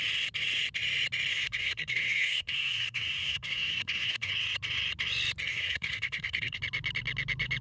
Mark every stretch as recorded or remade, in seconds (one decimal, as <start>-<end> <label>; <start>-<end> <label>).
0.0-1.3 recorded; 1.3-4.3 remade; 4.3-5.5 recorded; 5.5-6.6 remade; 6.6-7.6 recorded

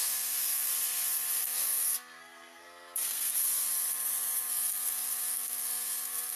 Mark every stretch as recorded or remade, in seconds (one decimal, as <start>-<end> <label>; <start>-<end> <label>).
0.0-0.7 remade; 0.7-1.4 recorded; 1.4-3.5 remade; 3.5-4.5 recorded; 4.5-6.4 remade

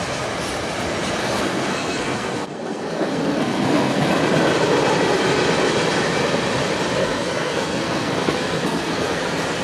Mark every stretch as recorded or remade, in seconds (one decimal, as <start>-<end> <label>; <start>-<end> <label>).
0.0-1.2 recorded; 1.2-4.1 remade; 4.1-7.0 recorded; 7.0-9.2 remade; 9.2-9.6 recorded

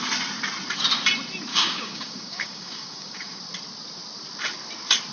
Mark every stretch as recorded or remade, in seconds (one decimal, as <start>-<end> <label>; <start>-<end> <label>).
0.0-1.5 recorded; 1.5-3.4 remade; 3.4-5.1 recorded